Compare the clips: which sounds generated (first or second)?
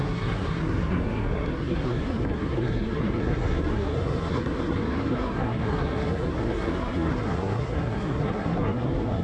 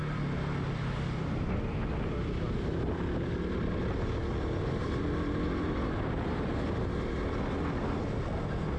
first